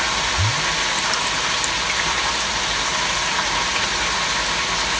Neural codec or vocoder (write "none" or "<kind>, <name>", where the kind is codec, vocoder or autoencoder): none